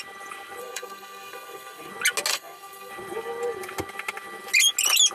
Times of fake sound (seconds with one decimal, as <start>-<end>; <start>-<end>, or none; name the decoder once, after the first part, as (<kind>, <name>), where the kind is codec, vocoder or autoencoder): 0.6-1.9 (codec, SNAC); 2.3-2.9